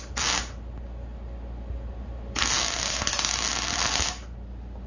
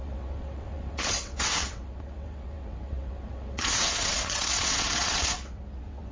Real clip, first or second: first